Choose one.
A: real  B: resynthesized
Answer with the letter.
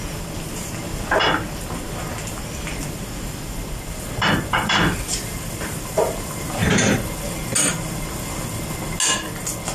A